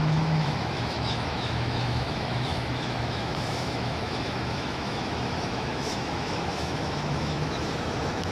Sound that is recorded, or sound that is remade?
remade